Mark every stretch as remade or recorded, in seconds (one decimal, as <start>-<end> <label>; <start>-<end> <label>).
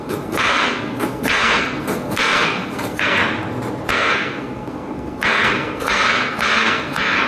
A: 0.0-3.2 remade; 3.2-3.9 recorded; 3.9-7.3 remade